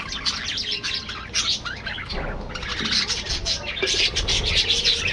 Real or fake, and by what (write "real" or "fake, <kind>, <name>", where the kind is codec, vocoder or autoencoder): real